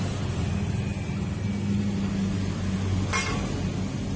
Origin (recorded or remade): recorded